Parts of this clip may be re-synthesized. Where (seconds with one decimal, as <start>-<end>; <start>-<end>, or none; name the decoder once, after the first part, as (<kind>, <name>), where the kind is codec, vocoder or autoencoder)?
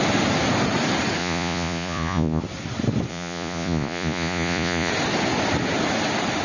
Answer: 1.2-2.4 (vocoder, Vocos); 3.1-4.9